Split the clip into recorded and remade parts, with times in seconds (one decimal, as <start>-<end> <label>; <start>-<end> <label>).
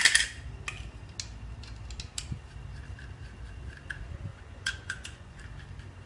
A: 0.0-4.3 recorded; 4.3-5.4 remade; 5.4-6.1 recorded